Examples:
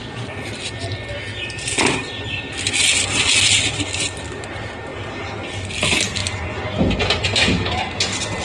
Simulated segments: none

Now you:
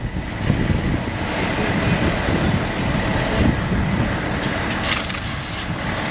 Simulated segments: none